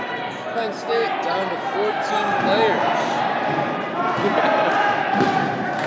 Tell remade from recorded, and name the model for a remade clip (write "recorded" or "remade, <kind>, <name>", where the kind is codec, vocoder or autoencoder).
recorded